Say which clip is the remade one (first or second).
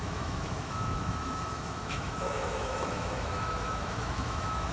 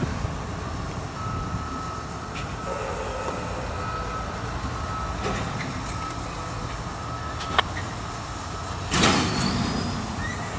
first